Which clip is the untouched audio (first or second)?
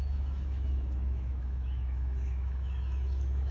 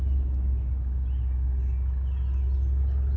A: second